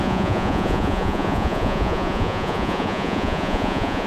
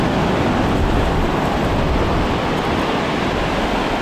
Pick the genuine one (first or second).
second